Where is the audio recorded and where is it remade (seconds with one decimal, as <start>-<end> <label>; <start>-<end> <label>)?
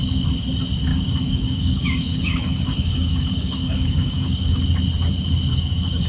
0.0-0.9 recorded; 0.9-4.6 remade; 4.6-5.5 recorded; 5.5-6.1 remade